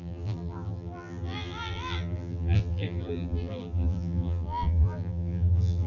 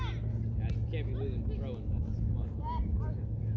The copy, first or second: first